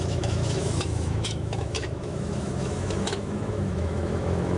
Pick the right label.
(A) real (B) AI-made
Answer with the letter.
B